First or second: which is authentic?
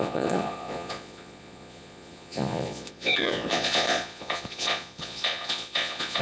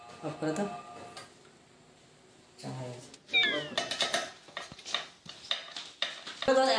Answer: second